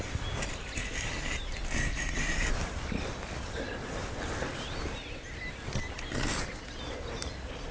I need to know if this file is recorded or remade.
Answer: recorded